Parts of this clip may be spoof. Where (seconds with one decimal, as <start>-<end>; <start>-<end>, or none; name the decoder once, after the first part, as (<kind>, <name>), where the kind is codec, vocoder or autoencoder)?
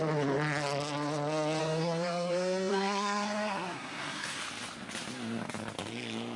1.6-4.4 (codec, SNAC)